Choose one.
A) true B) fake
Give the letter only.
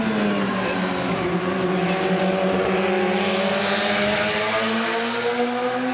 A